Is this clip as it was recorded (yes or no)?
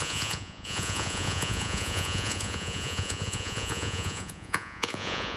no